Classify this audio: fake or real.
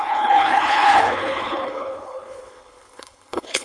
fake